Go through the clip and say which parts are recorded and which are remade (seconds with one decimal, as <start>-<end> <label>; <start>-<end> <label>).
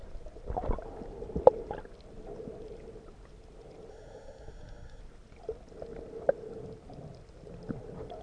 0.0-3.9 recorded; 3.9-5.0 remade; 5.0-8.2 recorded